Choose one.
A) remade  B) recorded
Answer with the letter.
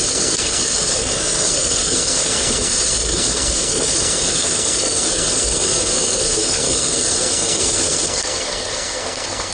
A